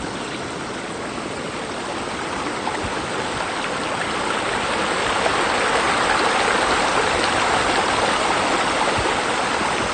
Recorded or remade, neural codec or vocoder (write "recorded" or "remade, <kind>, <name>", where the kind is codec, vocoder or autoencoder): recorded